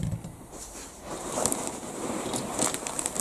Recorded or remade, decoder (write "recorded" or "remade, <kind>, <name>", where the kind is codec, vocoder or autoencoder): remade, vocoder, BigVGAN v2